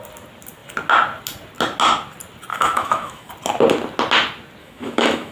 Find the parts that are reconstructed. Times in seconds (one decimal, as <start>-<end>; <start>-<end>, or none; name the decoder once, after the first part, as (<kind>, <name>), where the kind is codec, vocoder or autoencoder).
2.5-3.3 (autoencoder, DAC-VAE); 4.6-5.3

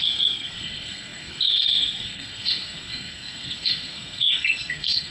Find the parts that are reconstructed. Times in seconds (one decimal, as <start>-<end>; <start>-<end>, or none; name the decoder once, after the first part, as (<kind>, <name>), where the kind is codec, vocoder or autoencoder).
0.0-5.1 (codec, SNAC)

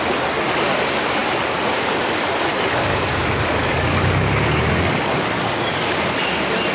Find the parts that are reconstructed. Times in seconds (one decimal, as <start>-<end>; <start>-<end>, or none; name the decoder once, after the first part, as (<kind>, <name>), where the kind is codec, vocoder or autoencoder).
2.5-6.3 (codec, DAC)

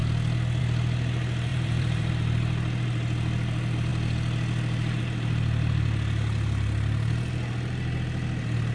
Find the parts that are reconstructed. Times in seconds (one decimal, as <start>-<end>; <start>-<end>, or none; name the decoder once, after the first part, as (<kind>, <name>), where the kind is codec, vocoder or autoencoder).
1.5-2.1 (vocoder, BigVGAN v2)